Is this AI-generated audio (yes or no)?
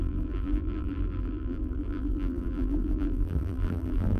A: yes